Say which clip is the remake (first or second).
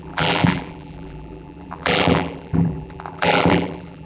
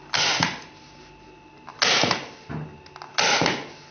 first